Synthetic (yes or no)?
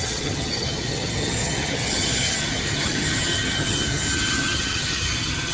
yes